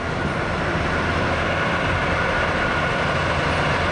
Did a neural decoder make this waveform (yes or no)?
no